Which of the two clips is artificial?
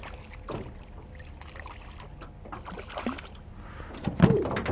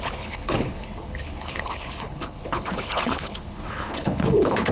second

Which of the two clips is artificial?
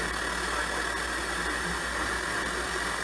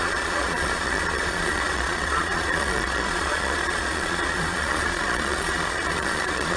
second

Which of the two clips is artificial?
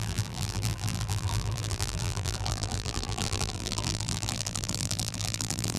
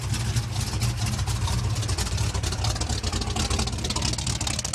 first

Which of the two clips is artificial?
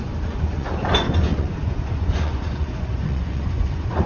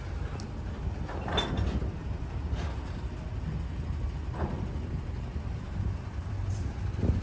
first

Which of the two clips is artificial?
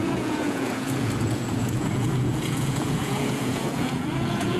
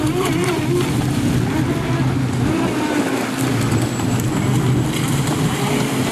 first